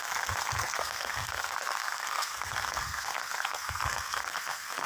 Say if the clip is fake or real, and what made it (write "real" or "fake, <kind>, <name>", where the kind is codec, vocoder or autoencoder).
fake, codec, SNAC